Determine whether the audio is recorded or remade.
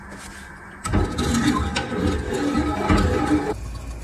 recorded